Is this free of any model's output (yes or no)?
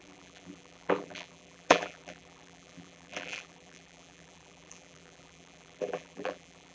no